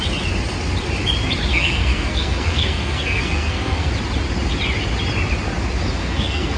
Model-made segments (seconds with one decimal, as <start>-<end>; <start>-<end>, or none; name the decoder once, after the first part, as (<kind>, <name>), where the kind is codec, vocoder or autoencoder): 1.5-3.9 (codec, SNAC); 6.0-6.6